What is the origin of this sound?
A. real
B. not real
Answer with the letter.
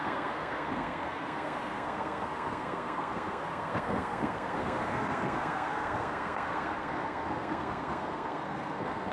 B